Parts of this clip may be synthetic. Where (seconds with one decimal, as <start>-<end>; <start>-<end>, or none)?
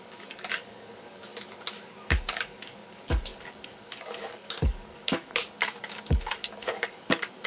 0.0-1.3; 1.9-7.5